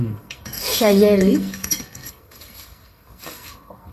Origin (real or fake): fake